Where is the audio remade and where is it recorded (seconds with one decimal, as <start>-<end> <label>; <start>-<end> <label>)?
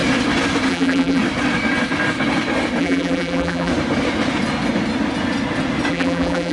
0.0-0.7 recorded; 0.7-1.2 remade; 1.2-2.8 recorded; 2.8-3.7 remade; 3.7-5.9 recorded; 5.9-6.5 remade